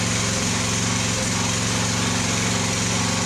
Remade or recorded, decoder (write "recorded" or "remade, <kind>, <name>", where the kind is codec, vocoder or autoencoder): recorded